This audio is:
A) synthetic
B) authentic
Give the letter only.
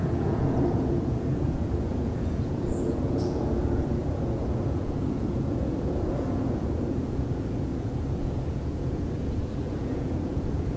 A